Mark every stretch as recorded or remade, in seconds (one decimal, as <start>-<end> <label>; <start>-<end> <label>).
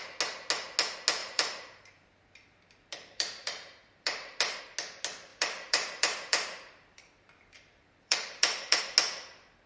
0.0-1.2 recorded; 1.2-4.6 remade; 4.6-5.3 recorded; 5.3-8.8 remade; 8.8-9.7 recorded